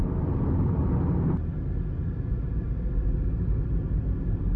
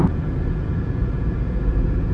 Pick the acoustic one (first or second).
first